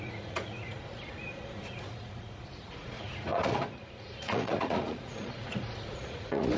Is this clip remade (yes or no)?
yes